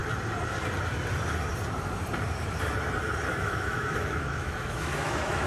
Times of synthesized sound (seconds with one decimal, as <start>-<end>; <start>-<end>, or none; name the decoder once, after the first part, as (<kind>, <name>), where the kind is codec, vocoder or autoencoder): 3.3-5.5 (autoencoder, DAC-VAE)